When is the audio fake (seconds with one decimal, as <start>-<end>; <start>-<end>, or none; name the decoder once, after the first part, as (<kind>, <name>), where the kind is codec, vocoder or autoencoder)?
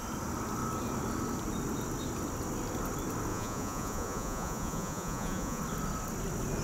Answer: 3.3-5.6 (vocoder, Vocos)